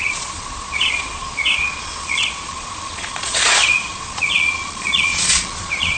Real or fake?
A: fake